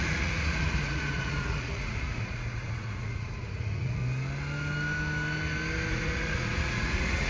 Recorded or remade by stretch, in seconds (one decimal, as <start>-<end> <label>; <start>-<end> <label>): 0.0-4.0 remade; 4.0-5.9 recorded; 5.9-7.3 remade